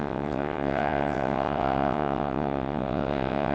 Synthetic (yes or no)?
yes